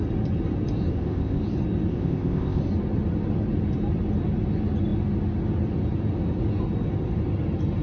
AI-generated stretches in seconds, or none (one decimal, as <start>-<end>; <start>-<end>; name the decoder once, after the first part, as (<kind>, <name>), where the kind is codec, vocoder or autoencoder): 0.9-1.4 (codec, ZipCodec); 1.9-2.6